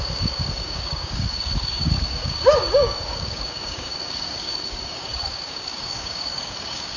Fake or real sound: fake